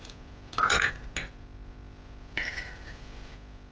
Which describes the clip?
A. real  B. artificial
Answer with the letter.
A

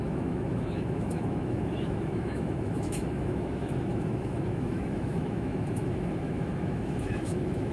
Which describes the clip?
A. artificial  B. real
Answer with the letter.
A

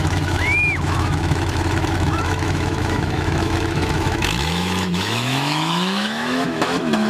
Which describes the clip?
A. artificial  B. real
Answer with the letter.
A